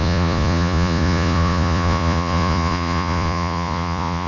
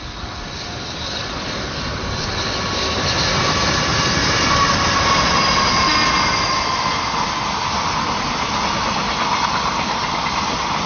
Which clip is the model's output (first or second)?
first